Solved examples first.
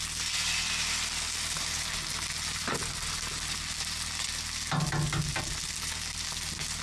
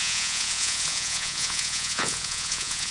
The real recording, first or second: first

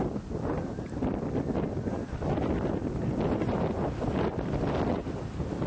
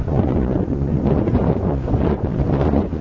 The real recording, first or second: first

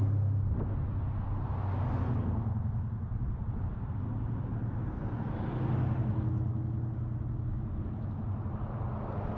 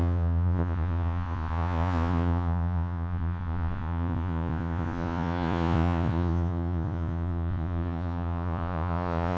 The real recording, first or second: first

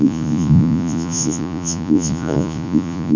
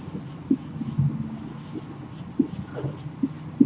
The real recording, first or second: second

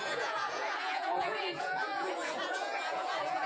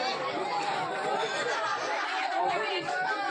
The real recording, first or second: second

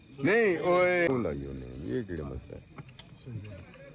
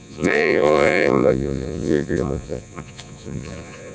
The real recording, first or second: first